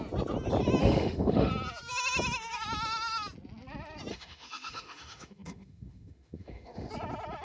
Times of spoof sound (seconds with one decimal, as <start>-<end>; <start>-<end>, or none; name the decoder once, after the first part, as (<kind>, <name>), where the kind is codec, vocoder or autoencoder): 0.8-1.5 (autoencoder, DAC-VAE); 4.1-6.9